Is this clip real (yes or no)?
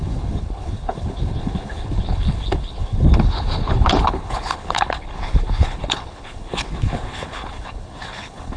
no